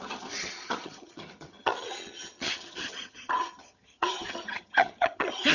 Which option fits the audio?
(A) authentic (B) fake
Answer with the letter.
B